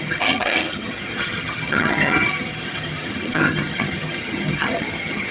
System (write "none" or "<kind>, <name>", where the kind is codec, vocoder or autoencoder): vocoder, HiFi-GAN